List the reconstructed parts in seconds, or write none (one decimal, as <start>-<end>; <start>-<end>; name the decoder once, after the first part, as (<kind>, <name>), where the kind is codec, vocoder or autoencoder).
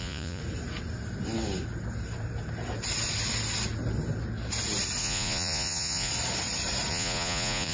0.0-0.4 (vocoder, Vocos); 5.0-6.1; 6.9-7.7